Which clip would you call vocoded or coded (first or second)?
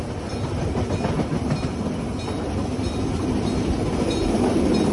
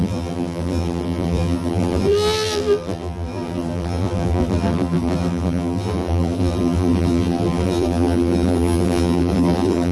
second